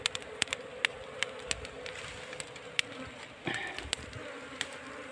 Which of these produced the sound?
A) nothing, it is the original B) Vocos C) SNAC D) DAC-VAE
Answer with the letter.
A